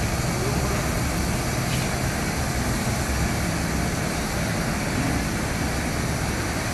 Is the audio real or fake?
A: real